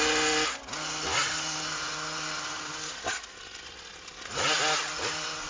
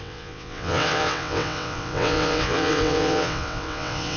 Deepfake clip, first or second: second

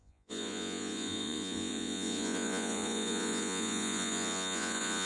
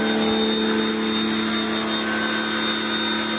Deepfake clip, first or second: first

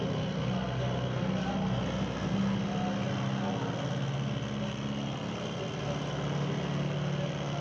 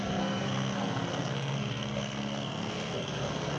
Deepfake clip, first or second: second